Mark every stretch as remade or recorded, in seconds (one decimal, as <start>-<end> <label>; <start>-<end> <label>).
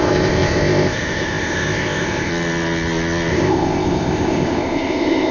0.0-2.3 remade; 2.3-3.3 recorded; 3.3-5.3 remade